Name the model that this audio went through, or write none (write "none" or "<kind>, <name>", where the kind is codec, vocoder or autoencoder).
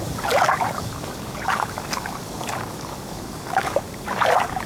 codec, DAC